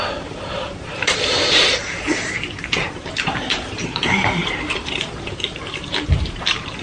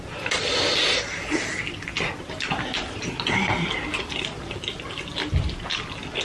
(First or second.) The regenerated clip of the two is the first